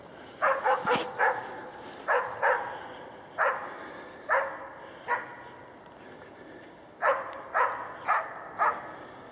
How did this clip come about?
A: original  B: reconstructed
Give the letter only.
A